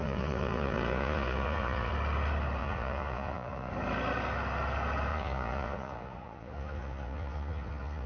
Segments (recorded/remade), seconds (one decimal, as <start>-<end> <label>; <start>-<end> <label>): 0.0-1.9 remade; 1.9-2.6 recorded; 2.6-3.7 remade; 3.7-5.1 recorded; 5.1-8.1 remade